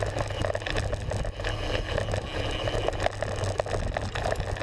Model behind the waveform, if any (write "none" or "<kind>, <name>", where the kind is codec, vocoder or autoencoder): none